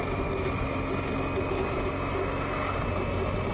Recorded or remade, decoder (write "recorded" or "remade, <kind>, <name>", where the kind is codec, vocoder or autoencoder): recorded